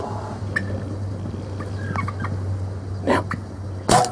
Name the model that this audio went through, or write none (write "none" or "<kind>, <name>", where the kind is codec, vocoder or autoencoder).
none